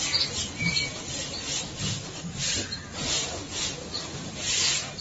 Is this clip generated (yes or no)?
no